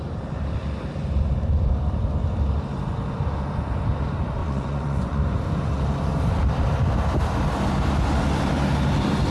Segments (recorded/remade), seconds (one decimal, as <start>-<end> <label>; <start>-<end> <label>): 0.0-4.4 recorded; 4.4-5.2 remade; 5.2-9.3 recorded